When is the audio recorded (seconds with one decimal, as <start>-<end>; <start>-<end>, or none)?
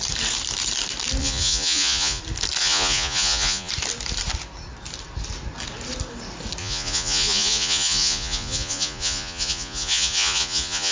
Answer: 0.0-1.2; 2.2-2.6; 3.7-6.6